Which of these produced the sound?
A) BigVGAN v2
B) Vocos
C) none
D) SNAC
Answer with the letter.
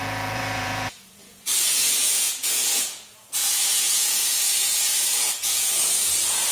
B